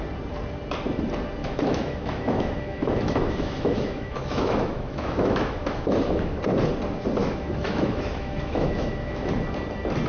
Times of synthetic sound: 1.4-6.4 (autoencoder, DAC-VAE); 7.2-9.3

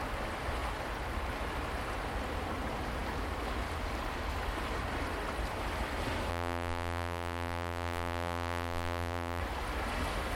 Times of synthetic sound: 6.3-9.4 (vocoder, BigVGAN v2)

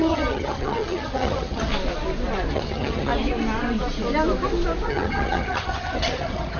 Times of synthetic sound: 0.0-1.7 (vocoder, HiFi-GAN); 2.5-3.1; 4.9-6.6